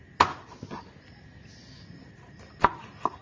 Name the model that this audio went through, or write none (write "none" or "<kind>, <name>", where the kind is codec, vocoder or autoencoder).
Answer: none